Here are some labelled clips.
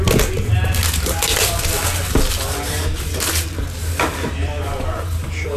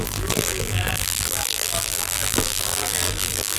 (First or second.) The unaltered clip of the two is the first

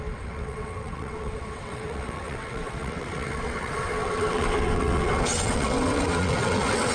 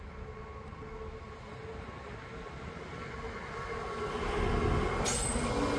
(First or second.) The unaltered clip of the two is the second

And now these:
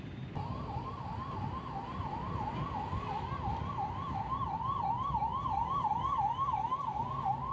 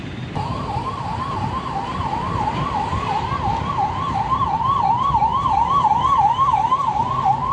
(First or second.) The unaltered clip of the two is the first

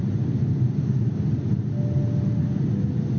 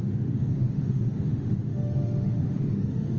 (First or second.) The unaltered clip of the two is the first